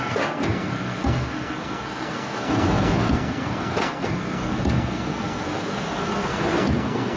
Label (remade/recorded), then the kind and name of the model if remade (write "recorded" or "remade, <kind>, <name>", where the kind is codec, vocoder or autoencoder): remade, codec, SNAC